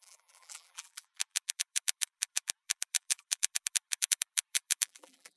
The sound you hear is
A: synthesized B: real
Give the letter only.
A